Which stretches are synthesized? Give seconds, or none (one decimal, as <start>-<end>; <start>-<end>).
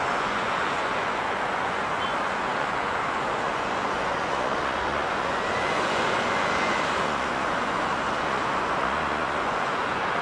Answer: 0.0-10.2